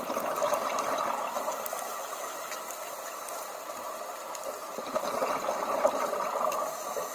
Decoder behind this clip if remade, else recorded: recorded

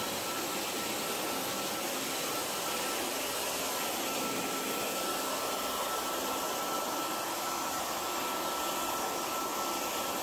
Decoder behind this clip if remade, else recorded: recorded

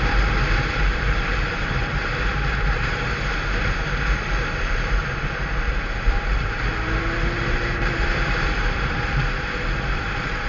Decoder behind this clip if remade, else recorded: remade, vocoder, BigVGAN v2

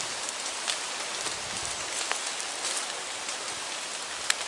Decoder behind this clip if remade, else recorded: recorded